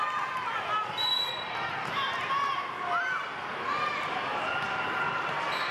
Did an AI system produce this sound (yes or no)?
no